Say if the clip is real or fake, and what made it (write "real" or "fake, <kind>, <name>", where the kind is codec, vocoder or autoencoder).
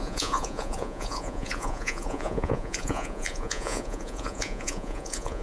fake, vocoder, Vocos